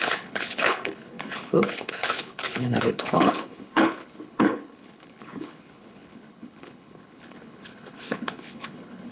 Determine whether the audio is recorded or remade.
remade